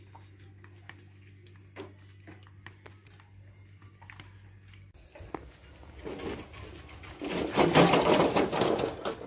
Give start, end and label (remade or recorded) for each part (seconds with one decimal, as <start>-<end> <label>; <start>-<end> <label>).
0.0-9.3 recorded